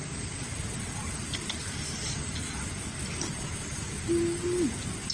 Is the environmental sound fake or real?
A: real